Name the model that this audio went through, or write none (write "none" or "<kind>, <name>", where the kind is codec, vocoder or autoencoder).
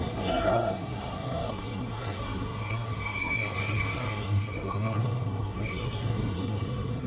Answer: codec, SNAC